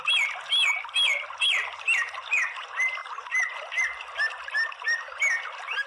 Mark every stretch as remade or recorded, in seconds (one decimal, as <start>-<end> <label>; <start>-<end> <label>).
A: 0.0-5.9 recorded